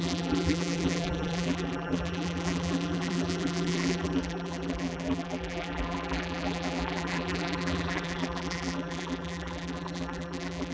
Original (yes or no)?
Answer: no